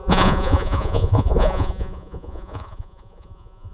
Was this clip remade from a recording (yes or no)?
yes